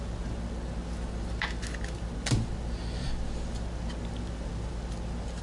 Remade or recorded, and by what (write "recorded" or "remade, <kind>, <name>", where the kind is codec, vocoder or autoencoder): recorded